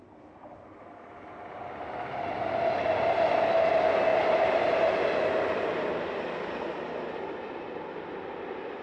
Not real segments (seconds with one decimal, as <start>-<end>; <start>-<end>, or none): 4.1-5.0